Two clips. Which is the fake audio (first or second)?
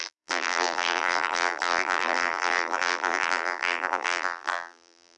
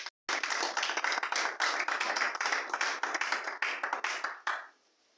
first